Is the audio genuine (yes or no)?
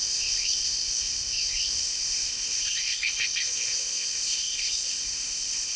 no